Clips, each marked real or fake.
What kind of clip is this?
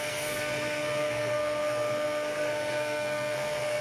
fake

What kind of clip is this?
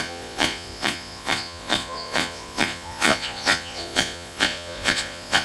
fake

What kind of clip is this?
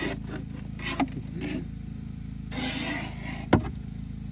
real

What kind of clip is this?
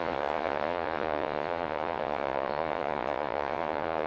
fake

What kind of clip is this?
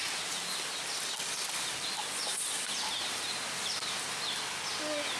real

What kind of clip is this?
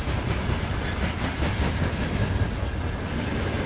real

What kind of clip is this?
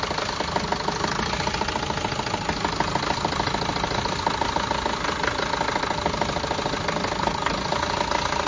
real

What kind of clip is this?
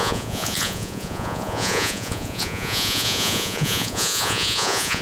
fake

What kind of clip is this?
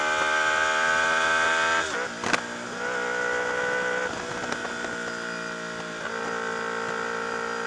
real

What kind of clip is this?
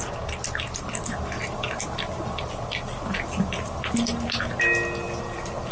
real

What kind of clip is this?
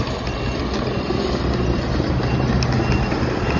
real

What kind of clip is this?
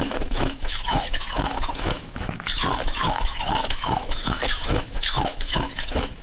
fake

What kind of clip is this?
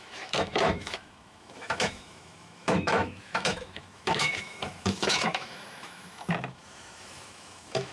fake